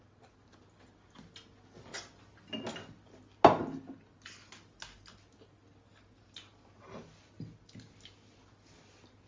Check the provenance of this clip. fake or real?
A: real